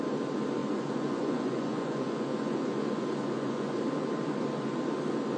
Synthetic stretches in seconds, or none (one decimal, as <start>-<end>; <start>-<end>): 0.6-3.8